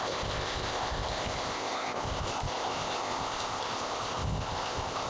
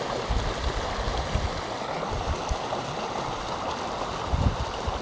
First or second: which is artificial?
first